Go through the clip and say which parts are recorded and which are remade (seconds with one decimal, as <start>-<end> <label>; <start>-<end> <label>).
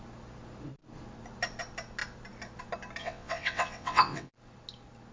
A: 0.0-3.0 recorded; 3.0-4.3 remade; 4.3-5.1 recorded